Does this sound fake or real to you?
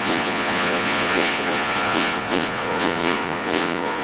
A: fake